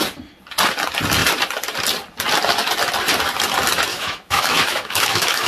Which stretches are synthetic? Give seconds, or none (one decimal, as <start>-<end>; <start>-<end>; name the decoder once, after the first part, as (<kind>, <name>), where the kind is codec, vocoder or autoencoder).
3.9-5.5 (autoencoder, DAC-VAE)